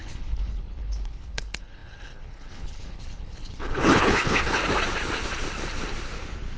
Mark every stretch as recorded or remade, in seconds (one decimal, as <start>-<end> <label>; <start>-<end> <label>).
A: 0.0-4.6 remade; 4.6-6.6 recorded